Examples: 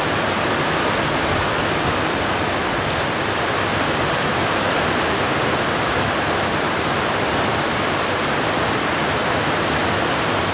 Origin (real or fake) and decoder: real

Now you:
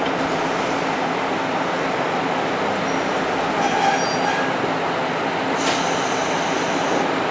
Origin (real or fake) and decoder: real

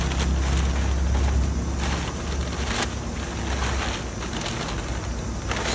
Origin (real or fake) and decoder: real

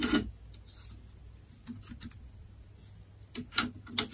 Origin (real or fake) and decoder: real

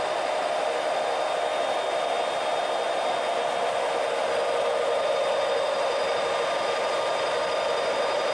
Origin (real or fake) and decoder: real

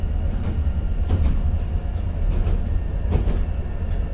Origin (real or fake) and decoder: real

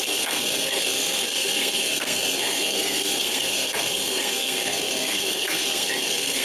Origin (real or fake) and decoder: fake, codec, SNAC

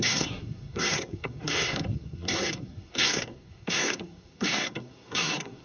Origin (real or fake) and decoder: fake, codec, SNAC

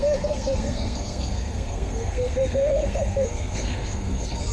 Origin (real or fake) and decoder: fake, codec, SNAC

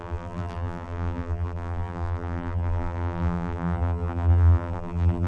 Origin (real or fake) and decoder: fake, vocoder, BigVGAN v2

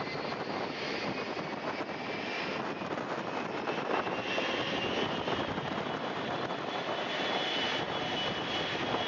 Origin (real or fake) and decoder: real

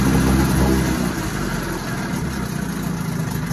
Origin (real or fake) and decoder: real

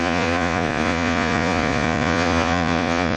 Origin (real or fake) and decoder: fake, vocoder, Vocos